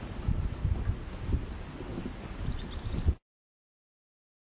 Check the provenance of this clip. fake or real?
real